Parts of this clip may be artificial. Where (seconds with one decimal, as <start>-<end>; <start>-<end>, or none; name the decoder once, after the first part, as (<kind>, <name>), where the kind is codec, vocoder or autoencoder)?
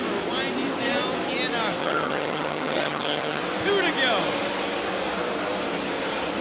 1.8-3.4 (vocoder, HiFi-GAN)